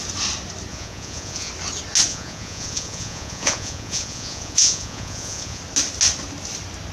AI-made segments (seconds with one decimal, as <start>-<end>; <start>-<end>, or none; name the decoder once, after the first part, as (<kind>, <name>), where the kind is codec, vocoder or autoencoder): 0.7-1.5 (vocoder, Vocos); 2.1-5.6